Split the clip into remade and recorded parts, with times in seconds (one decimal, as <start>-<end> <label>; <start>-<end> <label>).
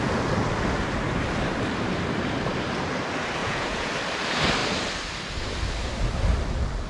0.0-3.4 recorded; 3.4-3.9 remade; 3.9-6.9 recorded